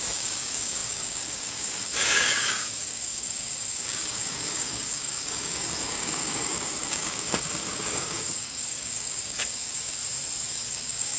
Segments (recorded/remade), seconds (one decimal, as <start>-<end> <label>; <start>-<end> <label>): 0.0-10.0 remade; 10.0-10.5 recorded; 10.5-11.2 remade